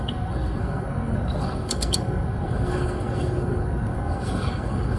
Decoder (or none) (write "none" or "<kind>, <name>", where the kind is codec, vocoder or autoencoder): codec, SNAC